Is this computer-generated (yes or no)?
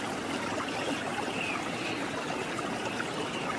no